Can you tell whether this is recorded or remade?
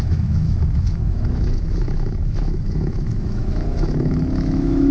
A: remade